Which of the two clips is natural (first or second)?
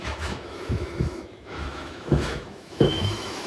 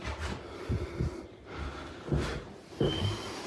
second